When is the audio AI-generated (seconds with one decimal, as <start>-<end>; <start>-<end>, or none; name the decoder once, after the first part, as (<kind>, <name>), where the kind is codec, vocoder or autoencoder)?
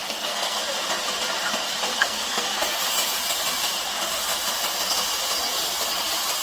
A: 0.0-0.6 (codec, SNAC); 1.9-2.8